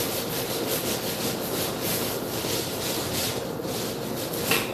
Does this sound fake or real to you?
real